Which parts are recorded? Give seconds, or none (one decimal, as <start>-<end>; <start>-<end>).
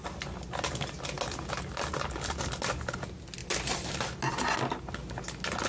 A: 0.0-5.7